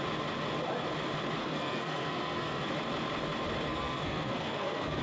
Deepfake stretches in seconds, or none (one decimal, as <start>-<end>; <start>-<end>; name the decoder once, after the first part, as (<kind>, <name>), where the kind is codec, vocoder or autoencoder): 1.4-2.7 (codec, SNAC); 3.7-5.0